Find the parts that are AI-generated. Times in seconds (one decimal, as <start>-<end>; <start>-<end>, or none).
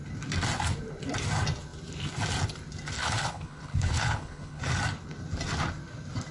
3.0-4.6